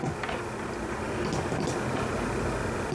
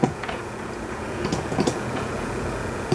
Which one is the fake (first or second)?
second